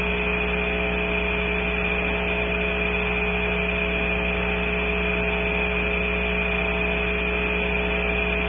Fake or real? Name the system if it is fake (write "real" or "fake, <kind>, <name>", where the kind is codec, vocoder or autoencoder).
real